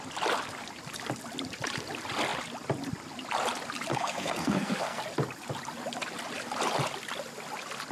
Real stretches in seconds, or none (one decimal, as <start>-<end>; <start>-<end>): 0.0-3.9; 5.0-7.9